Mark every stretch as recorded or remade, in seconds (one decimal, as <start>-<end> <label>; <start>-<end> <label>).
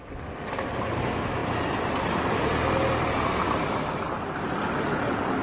0.0-5.4 recorded